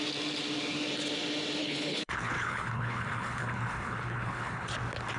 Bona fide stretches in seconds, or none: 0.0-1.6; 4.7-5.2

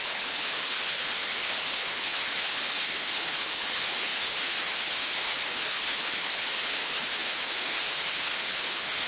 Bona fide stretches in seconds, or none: none